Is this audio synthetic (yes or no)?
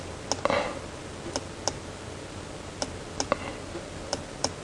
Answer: no